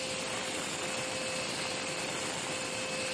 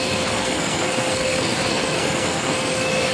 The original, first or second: first